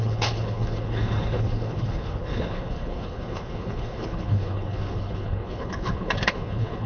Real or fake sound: fake